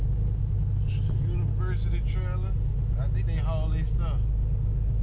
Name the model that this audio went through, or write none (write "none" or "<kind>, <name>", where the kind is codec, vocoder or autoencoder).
none